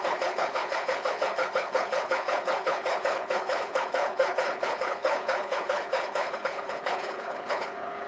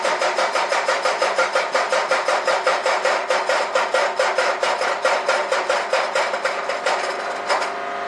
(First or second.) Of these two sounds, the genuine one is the second